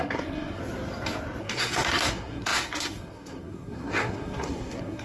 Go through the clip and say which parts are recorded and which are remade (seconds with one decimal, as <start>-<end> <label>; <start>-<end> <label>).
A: 0.0-0.6 remade; 0.6-1.4 recorded; 1.4-5.0 remade